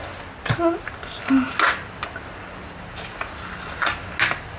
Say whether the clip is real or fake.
real